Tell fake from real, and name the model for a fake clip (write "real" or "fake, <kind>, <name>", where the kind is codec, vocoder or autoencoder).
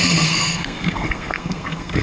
fake, codec, SNAC